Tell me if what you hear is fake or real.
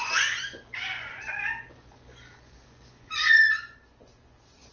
fake